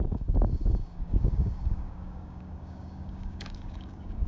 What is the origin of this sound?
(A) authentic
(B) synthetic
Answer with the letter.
B